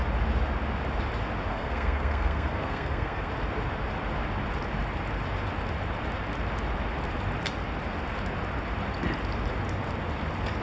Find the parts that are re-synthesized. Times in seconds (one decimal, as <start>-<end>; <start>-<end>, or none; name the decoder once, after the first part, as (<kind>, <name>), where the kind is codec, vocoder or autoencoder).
1.5-3.3 (codec, SNAC)